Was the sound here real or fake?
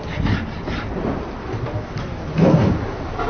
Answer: real